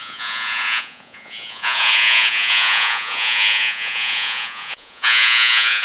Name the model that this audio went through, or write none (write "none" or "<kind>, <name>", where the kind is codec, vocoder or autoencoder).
vocoder, Vocos